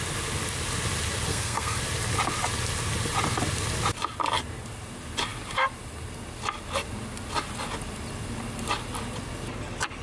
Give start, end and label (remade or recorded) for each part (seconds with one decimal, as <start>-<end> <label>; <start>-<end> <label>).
0.0-1.3 recorded; 1.3-1.8 remade; 1.8-10.0 recorded

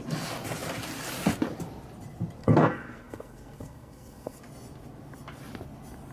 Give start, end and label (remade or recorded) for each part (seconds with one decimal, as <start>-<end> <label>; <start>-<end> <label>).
0.0-2.4 recorded; 2.4-4.4 remade; 4.4-6.1 recorded

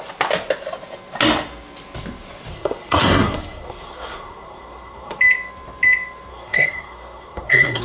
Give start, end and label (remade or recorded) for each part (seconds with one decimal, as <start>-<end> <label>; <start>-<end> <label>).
0.0-2.5 recorded; 2.5-5.2 remade; 5.2-6.3 recorded; 6.3-7.8 remade

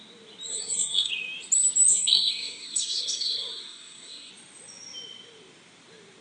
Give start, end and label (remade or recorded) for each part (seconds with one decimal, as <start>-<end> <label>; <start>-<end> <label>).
0.0-0.5 recorded; 0.5-1.1 remade; 1.1-1.9 recorded; 1.9-4.3 remade; 4.3-6.2 recorded

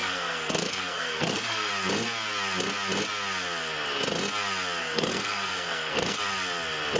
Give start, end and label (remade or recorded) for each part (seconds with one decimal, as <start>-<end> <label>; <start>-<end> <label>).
0.0-1.7 remade; 1.7-4.8 recorded; 4.8-6.2 remade; 6.2-7.0 recorded

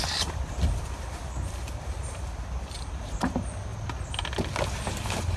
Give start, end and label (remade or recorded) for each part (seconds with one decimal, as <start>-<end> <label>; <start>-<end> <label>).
0.0-5.4 recorded

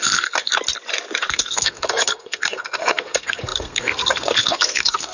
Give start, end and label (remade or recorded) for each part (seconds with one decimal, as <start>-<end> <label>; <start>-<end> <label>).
0.0-0.5 remade; 0.5-1.2 recorded; 1.2-5.1 remade

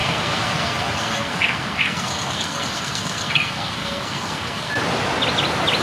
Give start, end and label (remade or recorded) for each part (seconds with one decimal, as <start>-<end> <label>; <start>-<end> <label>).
0.0-4.7 remade; 4.7-5.8 recorded